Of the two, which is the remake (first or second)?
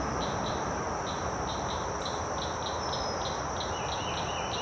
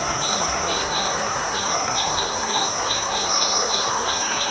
second